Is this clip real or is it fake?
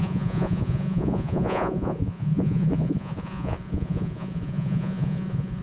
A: fake